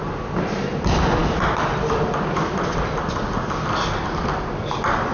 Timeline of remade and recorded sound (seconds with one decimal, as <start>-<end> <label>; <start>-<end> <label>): 0.0-5.1 recorded